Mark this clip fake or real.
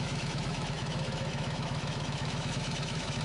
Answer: fake